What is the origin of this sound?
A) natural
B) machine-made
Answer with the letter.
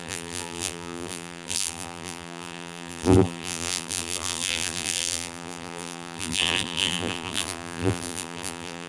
B